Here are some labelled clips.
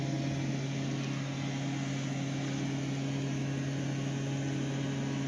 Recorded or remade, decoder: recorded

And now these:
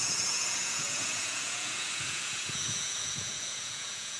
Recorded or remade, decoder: remade, vocoder, Vocos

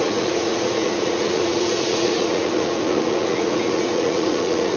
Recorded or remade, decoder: remade, vocoder, Vocos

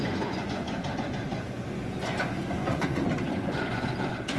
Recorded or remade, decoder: remade, vocoder, Vocos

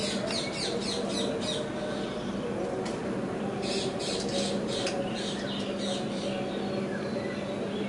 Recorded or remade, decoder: recorded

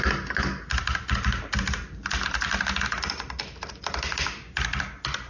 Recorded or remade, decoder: recorded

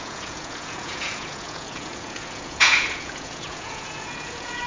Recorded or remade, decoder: remade, vocoder, Vocos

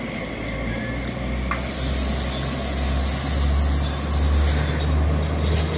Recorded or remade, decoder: recorded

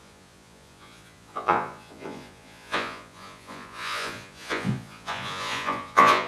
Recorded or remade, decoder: remade, vocoder, Vocos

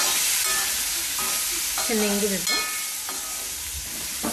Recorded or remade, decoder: recorded